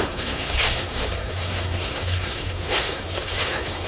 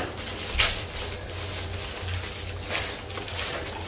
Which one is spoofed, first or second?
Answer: first